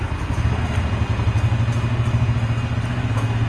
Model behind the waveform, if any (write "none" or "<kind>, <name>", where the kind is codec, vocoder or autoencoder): none